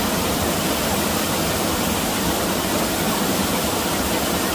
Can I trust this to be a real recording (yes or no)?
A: yes